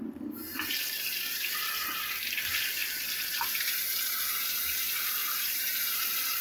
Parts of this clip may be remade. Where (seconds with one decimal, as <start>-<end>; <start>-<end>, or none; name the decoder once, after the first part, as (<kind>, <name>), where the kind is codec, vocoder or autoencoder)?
0.0-6.4 (vocoder, BigVGAN v2)